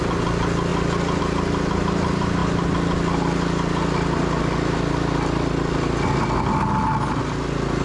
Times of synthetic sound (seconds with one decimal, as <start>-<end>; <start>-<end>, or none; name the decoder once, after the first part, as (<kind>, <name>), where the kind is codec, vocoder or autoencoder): none